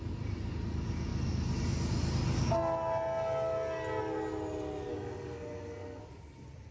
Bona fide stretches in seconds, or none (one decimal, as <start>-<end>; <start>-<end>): 0.0-4.9; 6.0-6.7